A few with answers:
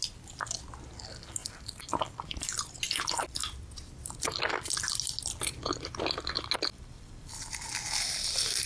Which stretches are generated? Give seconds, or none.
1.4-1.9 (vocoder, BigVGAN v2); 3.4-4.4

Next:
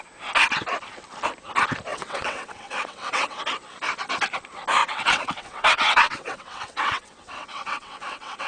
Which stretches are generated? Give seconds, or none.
1.9-3.4 (vocoder, WaveNeXt); 4.8-8.5